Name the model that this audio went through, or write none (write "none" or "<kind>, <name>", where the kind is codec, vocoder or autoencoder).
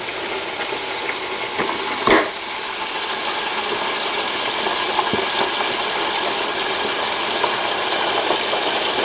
none